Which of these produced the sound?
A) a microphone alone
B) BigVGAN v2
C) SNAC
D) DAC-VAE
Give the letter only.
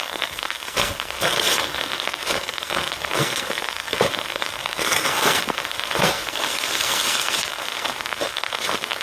C